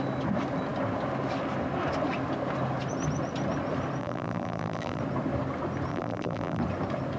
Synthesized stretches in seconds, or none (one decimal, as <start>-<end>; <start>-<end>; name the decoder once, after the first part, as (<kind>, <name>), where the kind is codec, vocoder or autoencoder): 4.0-5.0 (vocoder, BigVGAN v2); 5.9-6.6